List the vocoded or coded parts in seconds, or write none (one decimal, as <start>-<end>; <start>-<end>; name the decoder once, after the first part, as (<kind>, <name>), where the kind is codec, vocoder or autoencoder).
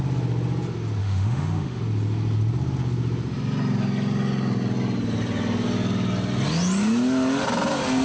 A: 1.0-1.8 (autoencoder, DAC-VAE)